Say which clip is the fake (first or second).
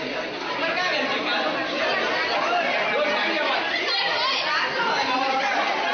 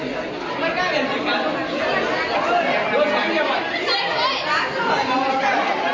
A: first